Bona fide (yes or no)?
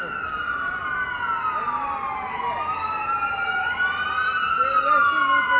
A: yes